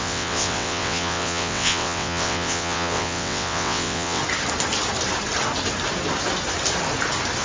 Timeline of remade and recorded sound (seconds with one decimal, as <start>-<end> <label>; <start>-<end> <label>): 0.0-4.2 remade; 4.2-7.4 recorded